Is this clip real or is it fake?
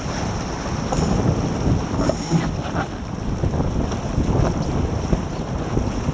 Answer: real